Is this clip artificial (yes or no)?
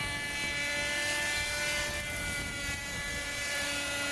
no